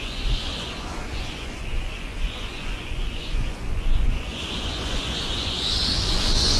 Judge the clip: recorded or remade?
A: remade